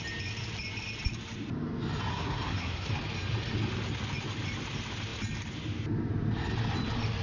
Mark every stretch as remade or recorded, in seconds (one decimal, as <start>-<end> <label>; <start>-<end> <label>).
0.0-2.1 recorded; 2.1-2.9 remade; 2.9-7.2 recorded